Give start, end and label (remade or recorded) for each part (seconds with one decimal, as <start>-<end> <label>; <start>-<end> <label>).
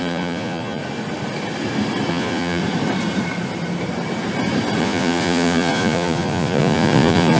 0.0-0.8 remade; 0.8-2.1 recorded; 2.1-2.6 remade; 2.6-4.8 recorded; 4.8-7.4 remade